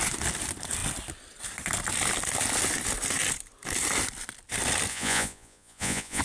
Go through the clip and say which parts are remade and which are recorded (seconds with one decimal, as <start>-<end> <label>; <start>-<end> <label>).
0.0-4.9 recorded; 4.9-6.2 remade